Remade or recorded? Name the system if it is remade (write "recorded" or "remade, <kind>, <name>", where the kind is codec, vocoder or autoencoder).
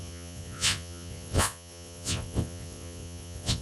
remade, vocoder, Vocos